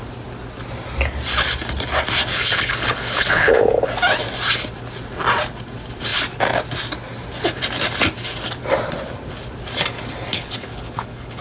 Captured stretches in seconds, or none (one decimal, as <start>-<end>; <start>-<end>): 0.0-2.3; 3.9-10.3